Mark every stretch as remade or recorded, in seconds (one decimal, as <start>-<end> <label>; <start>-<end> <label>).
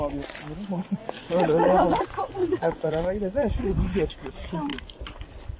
0.0-0.7 recorded; 0.7-4.1 remade; 4.1-5.6 recorded